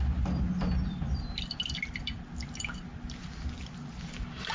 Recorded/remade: recorded